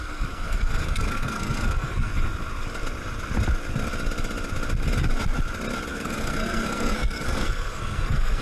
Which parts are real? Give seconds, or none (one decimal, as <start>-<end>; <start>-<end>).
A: 2.1-5.9